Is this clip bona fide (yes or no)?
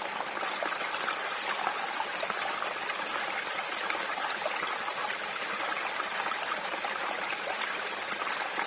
yes